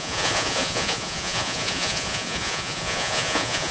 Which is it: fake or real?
fake